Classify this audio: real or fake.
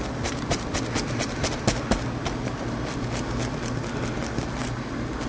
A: real